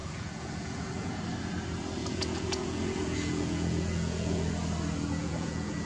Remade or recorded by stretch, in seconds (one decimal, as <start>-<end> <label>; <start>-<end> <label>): 0.0-1.2 remade; 1.2-2.0 recorded; 2.0-4.5 remade; 4.5-5.2 recorded; 5.2-5.9 remade